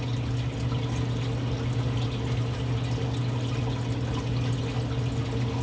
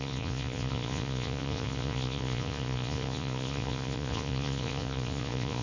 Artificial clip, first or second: second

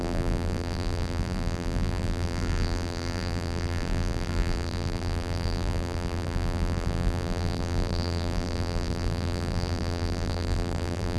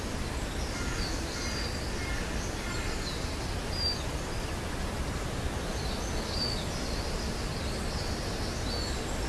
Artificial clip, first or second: first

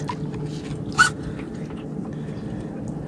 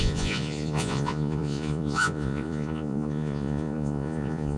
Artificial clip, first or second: second